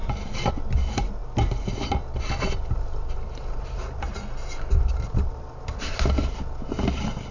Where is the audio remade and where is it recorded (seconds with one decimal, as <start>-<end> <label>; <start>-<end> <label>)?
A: 0.0-7.3 recorded